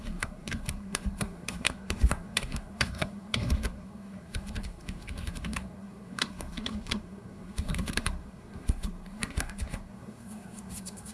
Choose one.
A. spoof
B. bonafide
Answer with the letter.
A